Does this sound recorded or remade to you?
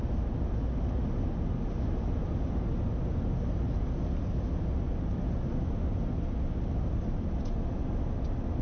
recorded